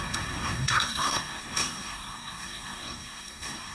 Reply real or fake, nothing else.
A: fake